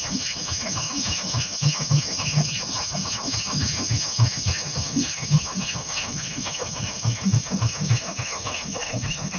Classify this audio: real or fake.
fake